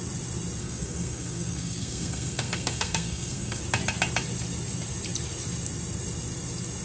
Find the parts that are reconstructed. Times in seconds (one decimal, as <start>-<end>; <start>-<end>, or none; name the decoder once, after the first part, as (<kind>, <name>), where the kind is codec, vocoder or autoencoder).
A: 0.6-3.6 (codec, SNAC)